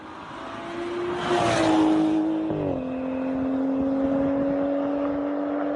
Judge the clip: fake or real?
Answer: real